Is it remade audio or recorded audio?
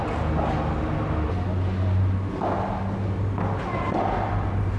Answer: recorded